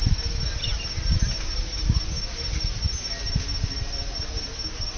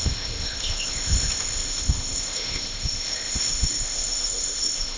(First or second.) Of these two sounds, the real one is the first